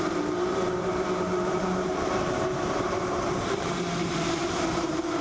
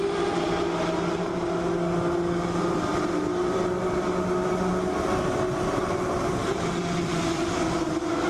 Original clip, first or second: second